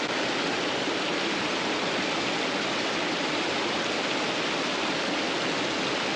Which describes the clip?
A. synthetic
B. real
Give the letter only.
B